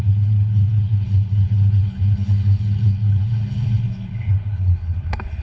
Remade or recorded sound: remade